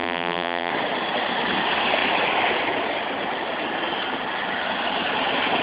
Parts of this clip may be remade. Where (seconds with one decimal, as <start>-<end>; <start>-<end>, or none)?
0.0-0.7